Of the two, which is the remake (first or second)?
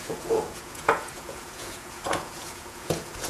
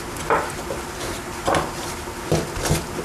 first